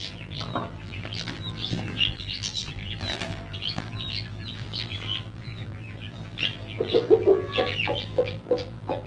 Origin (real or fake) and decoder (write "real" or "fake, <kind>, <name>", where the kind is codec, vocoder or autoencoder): fake, vocoder, BigVGAN v2